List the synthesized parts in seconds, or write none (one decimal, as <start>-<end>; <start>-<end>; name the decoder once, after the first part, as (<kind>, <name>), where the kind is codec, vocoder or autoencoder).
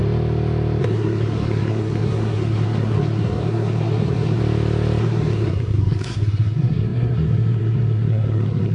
0.8-4.4 (codec, SNAC); 5.0-8.7